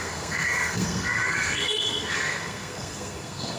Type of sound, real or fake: fake